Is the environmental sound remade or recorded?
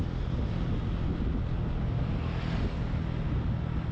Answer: recorded